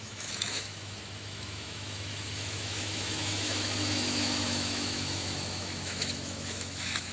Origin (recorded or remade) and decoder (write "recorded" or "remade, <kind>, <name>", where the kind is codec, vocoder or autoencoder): remade, autoencoder, DAC-VAE